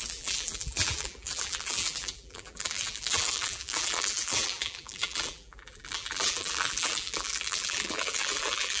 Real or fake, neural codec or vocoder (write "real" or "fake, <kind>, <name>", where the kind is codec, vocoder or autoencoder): fake, vocoder, BigVGAN v2